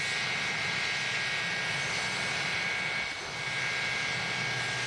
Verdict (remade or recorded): recorded